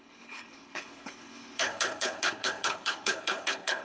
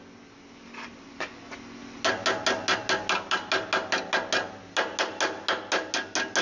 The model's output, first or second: first